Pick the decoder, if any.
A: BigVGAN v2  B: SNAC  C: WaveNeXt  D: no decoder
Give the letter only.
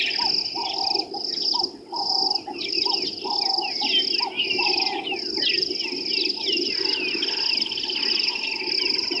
D